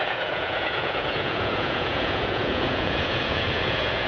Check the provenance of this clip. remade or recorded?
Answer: remade